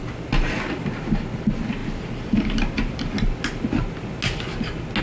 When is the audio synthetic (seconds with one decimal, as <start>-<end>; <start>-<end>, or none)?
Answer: none